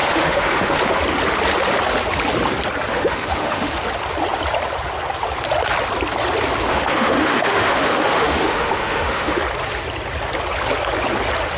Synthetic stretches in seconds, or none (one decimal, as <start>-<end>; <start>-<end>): 0.0-1.0; 2.9-3.7; 6.7-9.4